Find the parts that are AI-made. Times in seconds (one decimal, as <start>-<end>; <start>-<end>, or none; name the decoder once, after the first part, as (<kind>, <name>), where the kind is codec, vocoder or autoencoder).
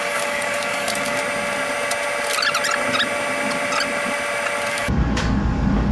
0.0-1.2 (codec, DAC); 4.7-5.9